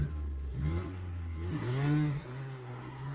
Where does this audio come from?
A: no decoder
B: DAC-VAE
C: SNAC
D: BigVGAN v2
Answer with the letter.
C